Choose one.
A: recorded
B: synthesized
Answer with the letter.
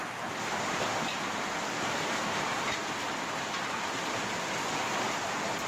A